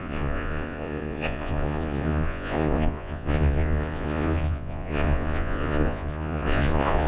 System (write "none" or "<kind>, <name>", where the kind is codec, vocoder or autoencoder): vocoder, Vocos